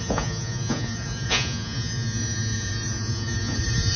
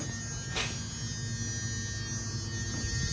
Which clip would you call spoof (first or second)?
first